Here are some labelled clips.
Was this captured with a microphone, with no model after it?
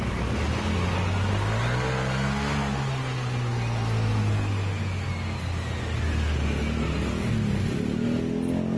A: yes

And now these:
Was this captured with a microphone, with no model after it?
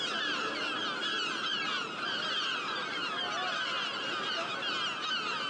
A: yes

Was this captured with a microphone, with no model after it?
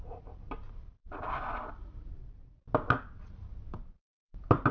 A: yes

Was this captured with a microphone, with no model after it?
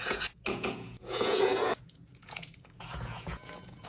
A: no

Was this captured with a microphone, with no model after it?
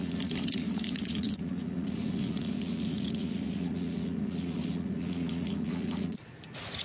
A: no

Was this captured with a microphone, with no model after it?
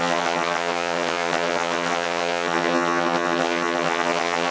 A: no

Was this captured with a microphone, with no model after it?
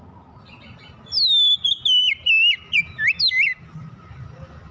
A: yes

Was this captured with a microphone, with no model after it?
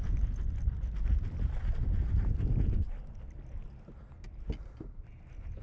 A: yes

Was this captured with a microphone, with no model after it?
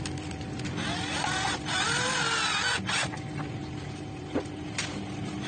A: yes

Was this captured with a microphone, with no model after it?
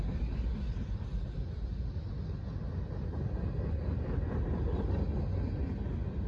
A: yes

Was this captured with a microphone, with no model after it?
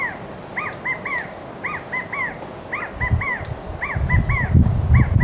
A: yes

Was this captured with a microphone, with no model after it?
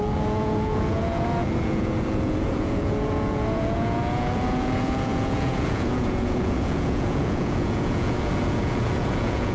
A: no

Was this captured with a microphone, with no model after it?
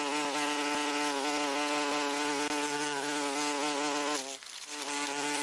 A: yes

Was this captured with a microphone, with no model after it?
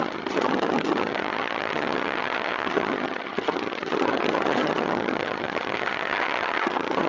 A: no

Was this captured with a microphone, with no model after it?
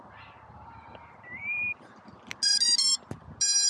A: yes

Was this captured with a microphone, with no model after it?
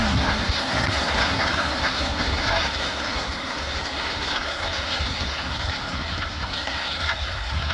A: no